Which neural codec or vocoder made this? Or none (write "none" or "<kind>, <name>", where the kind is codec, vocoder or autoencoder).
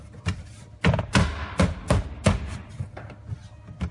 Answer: none